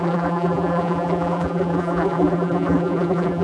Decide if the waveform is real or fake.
fake